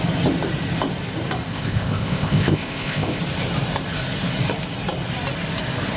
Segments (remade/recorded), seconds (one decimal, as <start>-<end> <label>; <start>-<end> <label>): 0.0-1.5 recorded; 1.5-3.2 remade; 3.2-6.0 recorded